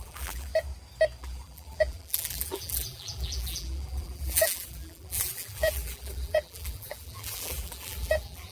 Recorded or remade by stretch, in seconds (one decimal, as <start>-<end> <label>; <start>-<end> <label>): 0.0-0.5 remade; 0.5-1.2 recorded; 1.2-8.5 remade